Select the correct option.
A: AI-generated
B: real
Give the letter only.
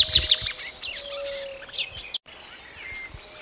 B